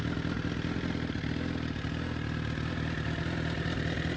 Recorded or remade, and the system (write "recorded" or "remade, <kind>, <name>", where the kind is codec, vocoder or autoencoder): recorded